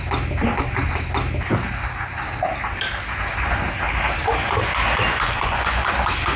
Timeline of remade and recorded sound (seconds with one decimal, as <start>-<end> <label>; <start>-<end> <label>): 0.0-5.1 recorded; 5.1-5.9 remade; 5.9-6.4 recorded